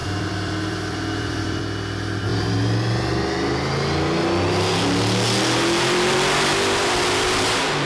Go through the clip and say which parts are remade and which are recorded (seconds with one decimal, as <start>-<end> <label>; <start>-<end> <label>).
0.0-1.6 remade; 1.6-7.9 recorded